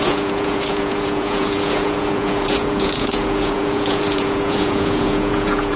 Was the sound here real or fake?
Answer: fake